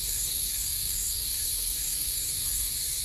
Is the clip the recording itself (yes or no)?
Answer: no